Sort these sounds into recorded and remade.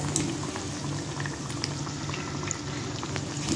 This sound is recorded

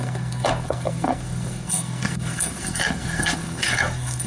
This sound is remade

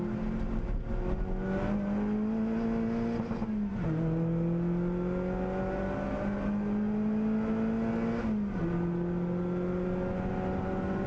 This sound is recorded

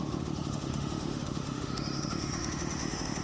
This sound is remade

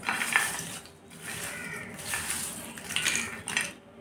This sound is remade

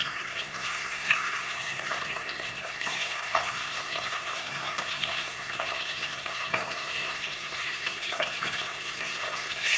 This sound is remade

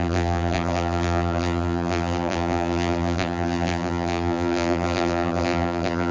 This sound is remade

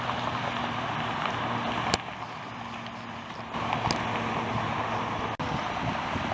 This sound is recorded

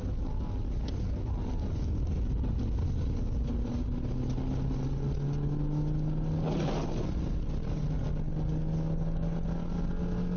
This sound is recorded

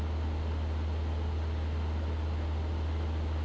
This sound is recorded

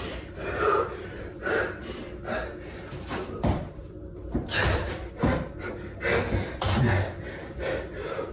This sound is recorded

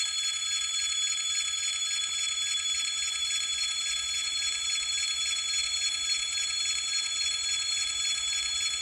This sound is remade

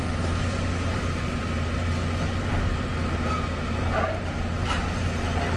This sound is recorded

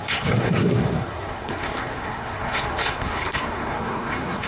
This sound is remade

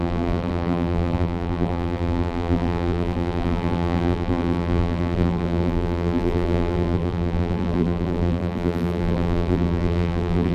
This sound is remade